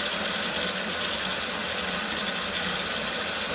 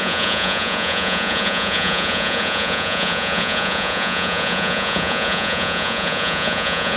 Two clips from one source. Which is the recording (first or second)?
first